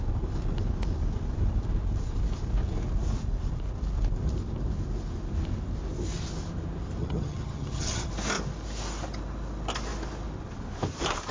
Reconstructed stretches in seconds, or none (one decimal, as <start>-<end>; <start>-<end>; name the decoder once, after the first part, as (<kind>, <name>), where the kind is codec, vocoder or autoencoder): 7.0-8.1 (vocoder, HiFi-GAN)